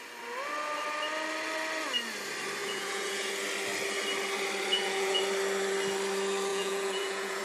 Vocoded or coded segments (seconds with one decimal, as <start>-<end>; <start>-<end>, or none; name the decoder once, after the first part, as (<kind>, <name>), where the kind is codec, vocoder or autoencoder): 2.6-3.3 (vocoder, Vocos); 4.7-5.2; 6.5-7.4